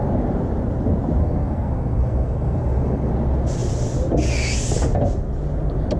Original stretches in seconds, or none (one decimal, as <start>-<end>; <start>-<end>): 0.0-1.2; 3.1-6.0